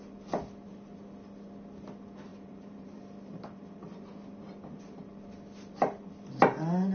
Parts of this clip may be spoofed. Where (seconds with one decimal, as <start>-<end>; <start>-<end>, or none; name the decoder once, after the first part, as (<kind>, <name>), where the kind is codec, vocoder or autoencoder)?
2.3-4.0 (vocoder, BigVGAN v2)